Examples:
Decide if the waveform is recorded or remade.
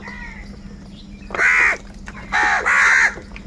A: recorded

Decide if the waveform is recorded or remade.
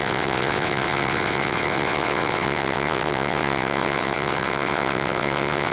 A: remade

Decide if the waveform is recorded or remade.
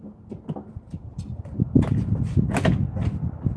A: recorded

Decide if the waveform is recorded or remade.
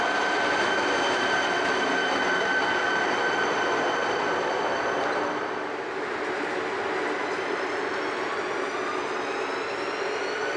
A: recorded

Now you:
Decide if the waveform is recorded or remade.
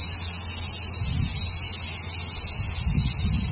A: recorded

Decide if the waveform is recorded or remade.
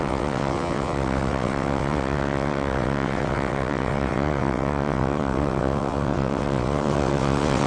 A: remade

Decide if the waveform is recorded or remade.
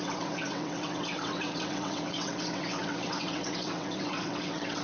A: remade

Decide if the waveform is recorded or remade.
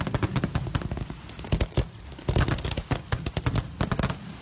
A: recorded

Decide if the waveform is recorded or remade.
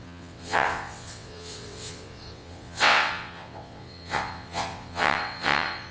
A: remade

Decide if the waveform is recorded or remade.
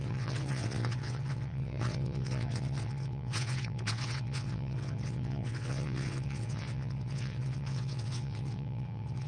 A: remade